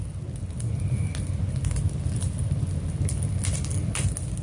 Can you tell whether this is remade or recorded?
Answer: recorded